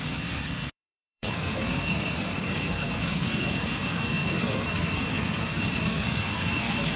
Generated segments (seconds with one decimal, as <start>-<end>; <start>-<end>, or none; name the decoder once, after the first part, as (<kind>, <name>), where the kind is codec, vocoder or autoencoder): 0.0-7.0 (codec, SNAC)